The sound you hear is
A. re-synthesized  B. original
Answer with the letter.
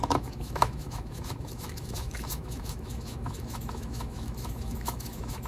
A